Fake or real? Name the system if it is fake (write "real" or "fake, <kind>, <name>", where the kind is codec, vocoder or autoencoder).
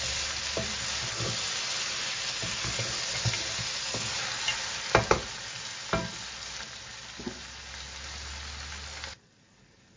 real